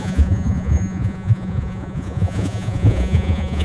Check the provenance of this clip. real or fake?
fake